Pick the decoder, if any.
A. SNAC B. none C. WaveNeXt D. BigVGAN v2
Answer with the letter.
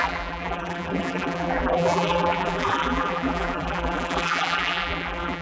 D